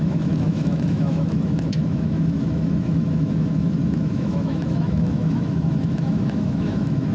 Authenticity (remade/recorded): remade